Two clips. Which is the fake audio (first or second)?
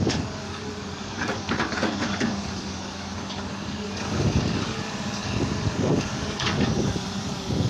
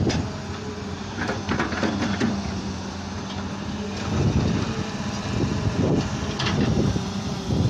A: first